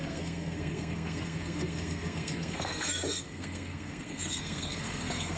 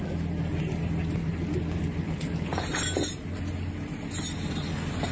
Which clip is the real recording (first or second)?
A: second